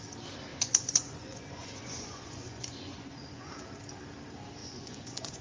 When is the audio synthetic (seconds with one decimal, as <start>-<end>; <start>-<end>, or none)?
0.5-3.5; 4.6-5.4